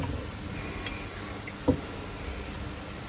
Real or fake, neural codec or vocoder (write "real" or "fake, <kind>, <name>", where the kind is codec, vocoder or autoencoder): real